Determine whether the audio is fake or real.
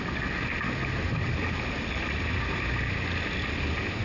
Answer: real